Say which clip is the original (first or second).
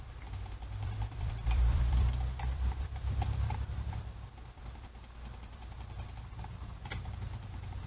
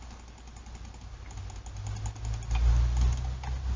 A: second